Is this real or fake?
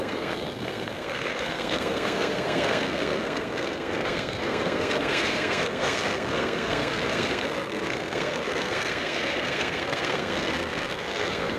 fake